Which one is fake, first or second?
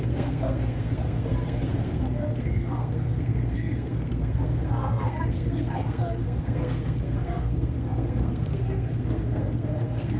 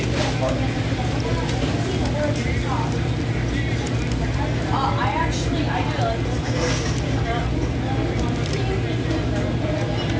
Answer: first